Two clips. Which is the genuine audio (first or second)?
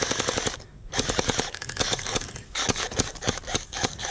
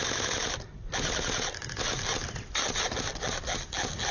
second